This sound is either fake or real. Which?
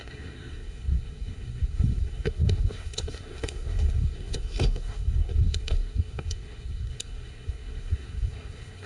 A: fake